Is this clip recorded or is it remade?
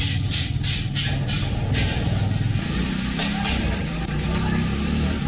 recorded